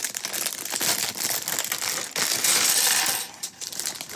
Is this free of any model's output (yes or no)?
yes